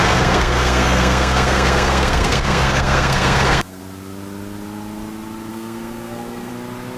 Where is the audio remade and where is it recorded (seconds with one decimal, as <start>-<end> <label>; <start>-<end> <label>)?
0.0-3.8 remade; 3.8-5.5 recorded; 5.5-6.5 remade; 6.5-7.0 recorded